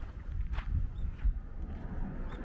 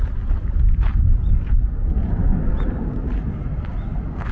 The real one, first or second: second